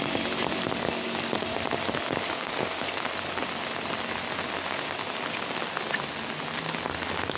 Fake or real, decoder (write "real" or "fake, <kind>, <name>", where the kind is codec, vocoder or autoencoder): real